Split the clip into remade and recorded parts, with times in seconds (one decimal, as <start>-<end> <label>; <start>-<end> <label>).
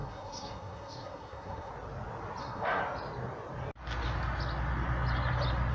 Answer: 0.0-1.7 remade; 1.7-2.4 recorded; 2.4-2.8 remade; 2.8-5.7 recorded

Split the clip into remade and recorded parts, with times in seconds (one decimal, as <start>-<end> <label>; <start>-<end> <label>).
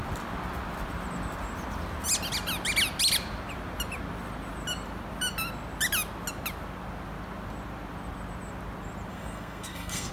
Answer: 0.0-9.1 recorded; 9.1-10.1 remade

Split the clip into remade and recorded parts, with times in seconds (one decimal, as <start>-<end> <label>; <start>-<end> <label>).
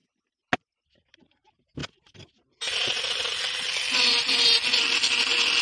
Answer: 0.0-5.6 recorded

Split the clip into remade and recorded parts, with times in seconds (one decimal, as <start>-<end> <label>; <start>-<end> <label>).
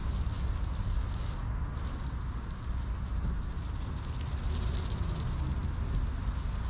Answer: 0.0-6.7 recorded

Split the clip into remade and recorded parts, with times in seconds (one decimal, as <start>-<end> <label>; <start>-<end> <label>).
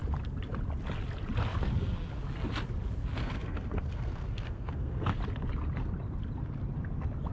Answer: 0.0-3.2 recorded; 3.2-5.2 remade; 5.2-7.3 recorded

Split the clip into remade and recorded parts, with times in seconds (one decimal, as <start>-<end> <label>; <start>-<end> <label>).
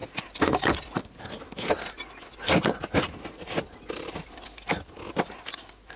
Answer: 0.0-6.0 recorded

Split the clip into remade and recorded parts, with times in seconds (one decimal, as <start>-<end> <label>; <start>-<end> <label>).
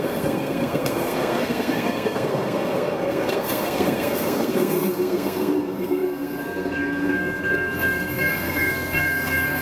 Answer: 0.0-9.6 remade